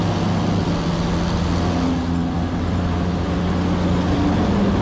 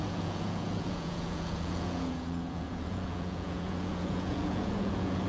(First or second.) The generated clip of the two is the second